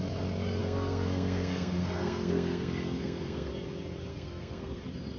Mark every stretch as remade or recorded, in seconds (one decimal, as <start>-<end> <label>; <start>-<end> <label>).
0.0-0.6 recorded; 0.6-3.5 remade; 3.5-4.1 recorded; 4.1-4.8 remade; 4.8-5.2 recorded